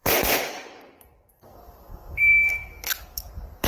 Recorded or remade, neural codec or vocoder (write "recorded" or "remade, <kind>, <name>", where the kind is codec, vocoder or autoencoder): remade, codec, SNAC